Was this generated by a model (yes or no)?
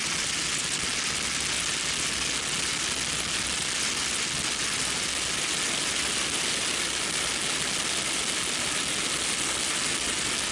no